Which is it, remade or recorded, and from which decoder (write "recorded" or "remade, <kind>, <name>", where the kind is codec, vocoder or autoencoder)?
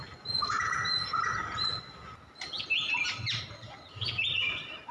recorded